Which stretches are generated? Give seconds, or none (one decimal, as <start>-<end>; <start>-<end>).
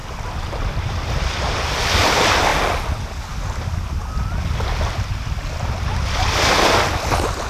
0.0-1.6